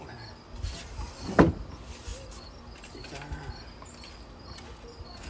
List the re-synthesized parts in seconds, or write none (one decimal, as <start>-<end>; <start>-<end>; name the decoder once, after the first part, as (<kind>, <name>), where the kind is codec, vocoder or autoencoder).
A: none